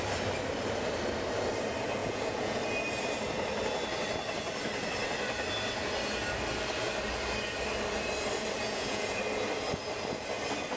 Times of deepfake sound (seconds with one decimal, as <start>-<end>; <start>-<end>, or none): 2.0-2.6; 8.6-9.2